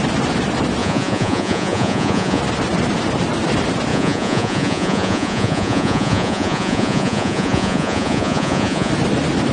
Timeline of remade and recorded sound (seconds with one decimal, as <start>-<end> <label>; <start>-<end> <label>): 0.0-0.8 recorded; 0.8-2.4 remade; 2.4-3.9 recorded; 3.9-8.9 remade; 8.9-9.5 recorded